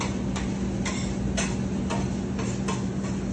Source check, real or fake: real